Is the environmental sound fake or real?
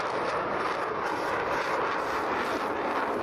fake